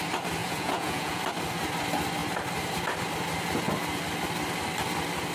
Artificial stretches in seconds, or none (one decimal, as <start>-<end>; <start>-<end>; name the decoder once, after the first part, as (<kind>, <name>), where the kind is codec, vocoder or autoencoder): 0.4-1.2 (vocoder, Vocos)